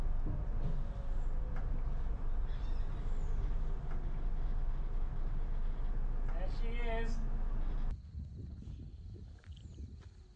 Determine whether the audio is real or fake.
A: real